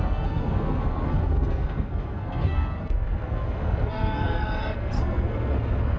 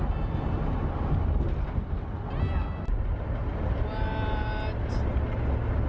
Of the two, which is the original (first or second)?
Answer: second